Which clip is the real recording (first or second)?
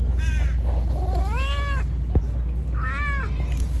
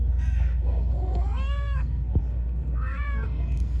first